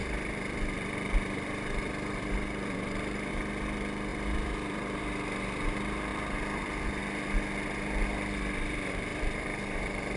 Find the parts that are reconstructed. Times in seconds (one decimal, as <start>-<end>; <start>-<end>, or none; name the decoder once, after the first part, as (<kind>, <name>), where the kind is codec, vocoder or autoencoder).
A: 0.0-3.3 (vocoder, BigVGAN v2); 4.1-5.0; 6.1-7.0; 9.1-10.2